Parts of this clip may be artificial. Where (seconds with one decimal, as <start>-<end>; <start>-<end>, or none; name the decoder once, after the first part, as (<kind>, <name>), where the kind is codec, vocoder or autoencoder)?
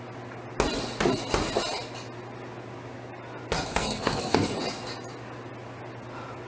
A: 3.7-4.5 (codec, SNAC)